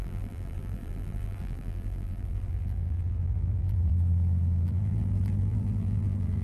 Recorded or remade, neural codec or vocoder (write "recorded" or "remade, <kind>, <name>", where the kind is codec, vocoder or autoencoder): remade, vocoder, BigVGAN v2